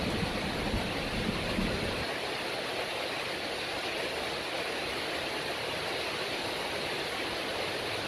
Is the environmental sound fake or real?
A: real